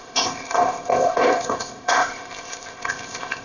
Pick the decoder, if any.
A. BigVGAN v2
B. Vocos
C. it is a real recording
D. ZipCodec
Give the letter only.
D